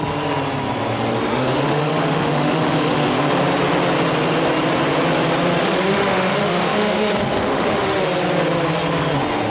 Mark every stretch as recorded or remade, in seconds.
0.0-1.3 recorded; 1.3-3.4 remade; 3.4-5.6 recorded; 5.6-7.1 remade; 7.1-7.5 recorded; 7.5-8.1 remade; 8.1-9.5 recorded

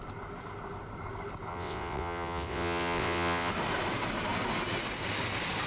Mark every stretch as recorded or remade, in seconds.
0.0-1.5 recorded; 1.5-3.5 remade; 3.5-5.7 recorded

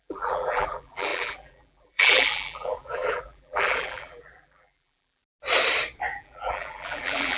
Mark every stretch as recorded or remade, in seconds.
0.0-5.2 remade; 5.2-6.1 recorded; 6.1-7.4 remade